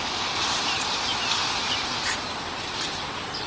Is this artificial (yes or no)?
no